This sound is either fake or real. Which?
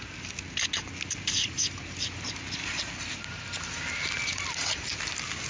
real